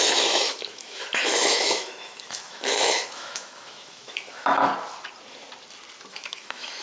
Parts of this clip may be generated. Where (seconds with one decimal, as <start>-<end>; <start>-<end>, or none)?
0.0-4.7; 6.1-6.8

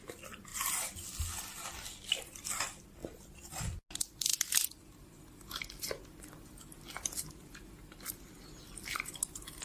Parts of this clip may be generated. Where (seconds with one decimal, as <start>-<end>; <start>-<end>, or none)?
none